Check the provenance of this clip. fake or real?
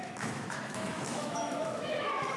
fake